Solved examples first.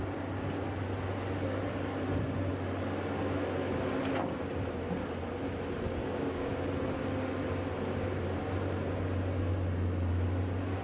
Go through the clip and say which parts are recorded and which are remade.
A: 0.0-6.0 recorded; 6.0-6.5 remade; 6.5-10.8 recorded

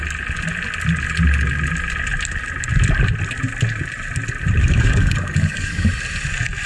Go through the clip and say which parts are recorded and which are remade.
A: 0.0-4.6 recorded; 4.6-5.9 remade; 5.9-6.7 recorded

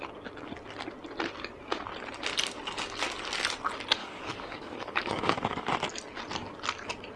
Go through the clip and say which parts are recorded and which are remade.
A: 0.0-4.0 recorded; 4.0-5.7 remade; 5.7-7.2 recorded

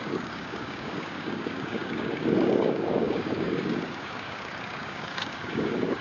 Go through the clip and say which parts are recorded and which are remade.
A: 0.0-6.0 remade

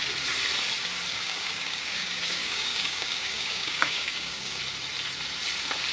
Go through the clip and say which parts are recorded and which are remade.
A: 0.0-1.1 recorded; 1.1-4.6 remade; 4.6-5.9 recorded

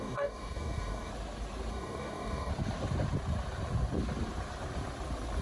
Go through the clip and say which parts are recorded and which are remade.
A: 0.0-1.1 remade; 1.1-1.7 recorded; 1.7-2.5 remade; 2.5-5.4 recorded

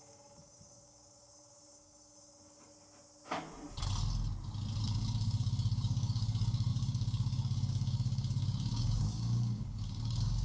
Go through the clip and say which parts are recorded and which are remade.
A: 0.0-2.7 remade; 2.7-4.8 recorded; 4.8-10.4 remade

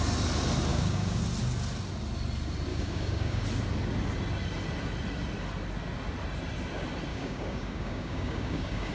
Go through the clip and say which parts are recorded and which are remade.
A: 0.0-0.7 recorded; 0.7-1.2 remade; 1.2-2.7 recorded; 2.7-3.4 remade; 3.4-7.1 recorded; 7.1-8.9 remade